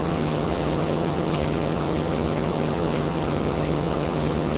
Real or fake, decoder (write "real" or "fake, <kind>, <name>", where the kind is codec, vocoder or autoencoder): fake, vocoder, HiFi-GAN